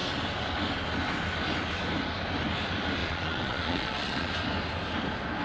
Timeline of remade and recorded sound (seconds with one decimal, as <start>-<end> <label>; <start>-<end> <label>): 0.0-3.0 recorded; 3.0-4.3 remade; 4.3-5.4 recorded